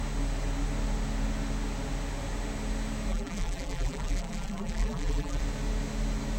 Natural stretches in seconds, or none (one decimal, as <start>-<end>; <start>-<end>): 0.0-3.1; 5.4-6.4